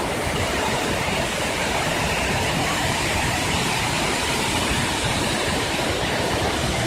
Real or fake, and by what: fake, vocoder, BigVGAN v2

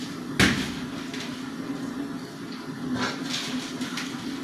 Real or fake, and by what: real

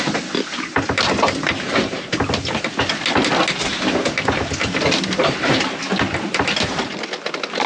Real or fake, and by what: real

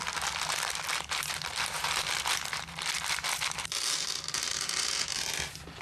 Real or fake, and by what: fake, vocoder, BigVGAN v2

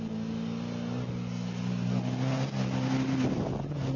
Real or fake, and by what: real